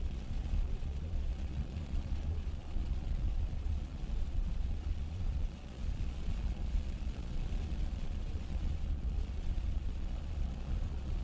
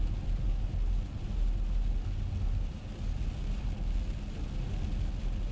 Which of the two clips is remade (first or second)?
first